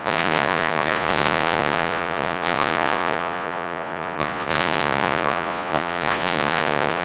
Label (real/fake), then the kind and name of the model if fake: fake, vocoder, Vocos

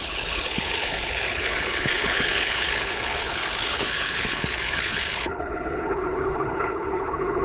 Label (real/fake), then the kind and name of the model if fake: fake, codec, HILCodec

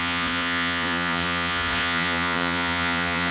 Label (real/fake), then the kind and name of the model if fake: fake, vocoder, Vocos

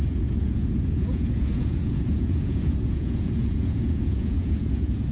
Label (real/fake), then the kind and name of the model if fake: fake, vocoder, Vocos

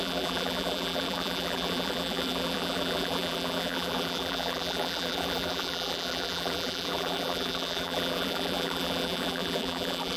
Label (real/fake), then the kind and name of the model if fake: fake, vocoder, BigVGAN v2